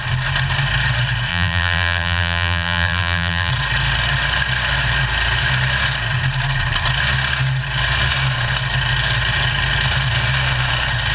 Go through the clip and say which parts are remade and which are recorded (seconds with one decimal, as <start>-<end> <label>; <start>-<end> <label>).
0.0-1.3 recorded; 1.3-3.5 remade; 3.5-11.1 recorded